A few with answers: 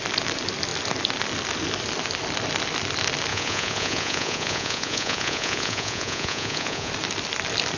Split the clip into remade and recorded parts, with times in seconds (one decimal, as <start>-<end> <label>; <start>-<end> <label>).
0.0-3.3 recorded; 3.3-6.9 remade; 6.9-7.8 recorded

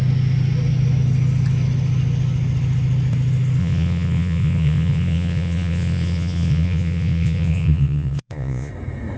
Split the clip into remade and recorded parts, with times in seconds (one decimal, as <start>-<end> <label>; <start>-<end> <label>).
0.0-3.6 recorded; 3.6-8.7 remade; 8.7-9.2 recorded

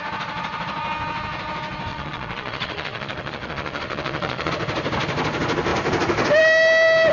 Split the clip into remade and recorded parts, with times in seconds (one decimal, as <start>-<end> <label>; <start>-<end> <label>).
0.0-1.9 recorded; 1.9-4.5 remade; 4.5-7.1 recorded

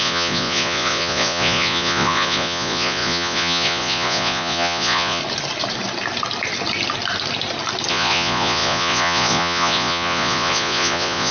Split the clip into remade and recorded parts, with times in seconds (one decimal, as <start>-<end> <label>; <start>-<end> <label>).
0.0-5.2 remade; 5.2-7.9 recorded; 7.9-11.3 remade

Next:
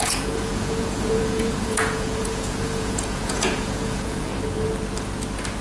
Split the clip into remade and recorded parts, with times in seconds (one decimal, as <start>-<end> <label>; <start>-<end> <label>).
0.0-4.3 remade; 4.3-5.6 recorded

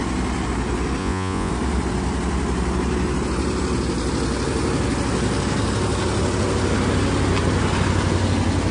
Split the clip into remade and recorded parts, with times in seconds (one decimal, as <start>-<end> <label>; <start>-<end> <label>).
0.0-1.0 recorded; 1.0-1.5 remade; 1.5-8.7 recorded